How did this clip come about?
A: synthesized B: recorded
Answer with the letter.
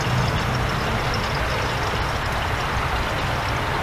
B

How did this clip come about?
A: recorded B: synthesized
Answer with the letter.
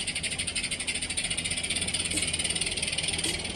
A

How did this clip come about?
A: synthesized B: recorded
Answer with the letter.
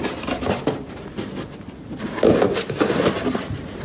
B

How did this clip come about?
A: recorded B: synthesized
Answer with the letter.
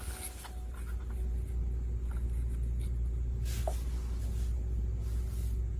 A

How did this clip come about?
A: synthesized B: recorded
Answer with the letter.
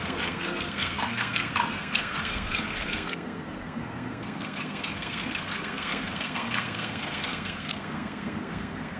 A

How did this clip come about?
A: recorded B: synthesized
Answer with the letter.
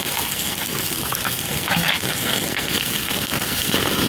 B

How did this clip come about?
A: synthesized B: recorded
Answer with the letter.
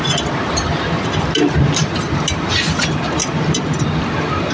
B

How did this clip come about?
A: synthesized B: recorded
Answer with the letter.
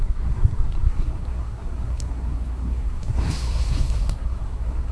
A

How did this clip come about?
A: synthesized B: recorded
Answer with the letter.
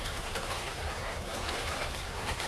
A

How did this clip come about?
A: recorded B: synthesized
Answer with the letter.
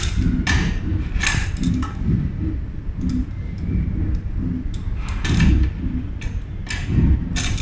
A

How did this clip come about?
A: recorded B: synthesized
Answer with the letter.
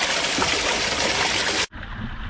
A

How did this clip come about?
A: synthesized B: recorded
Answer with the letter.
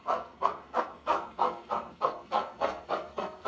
A